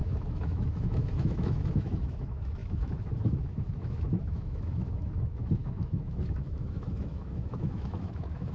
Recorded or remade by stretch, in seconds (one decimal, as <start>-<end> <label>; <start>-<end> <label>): 0.0-8.5 remade